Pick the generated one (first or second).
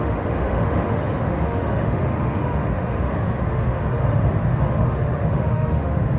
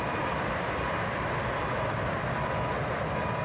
first